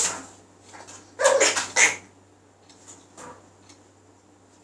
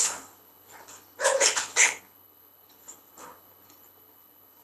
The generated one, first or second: second